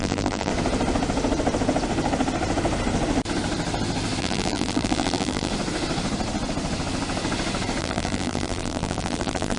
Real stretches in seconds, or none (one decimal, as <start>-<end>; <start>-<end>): 0.5-4.2; 5.5-7.8